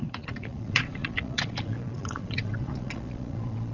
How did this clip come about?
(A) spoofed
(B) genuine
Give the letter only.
A